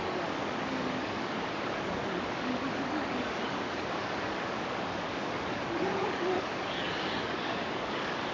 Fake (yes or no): yes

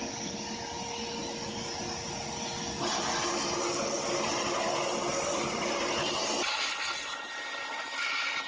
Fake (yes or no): no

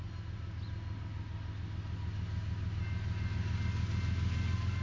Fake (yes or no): no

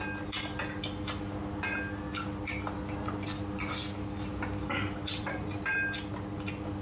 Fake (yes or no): no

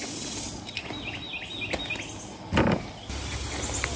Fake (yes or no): no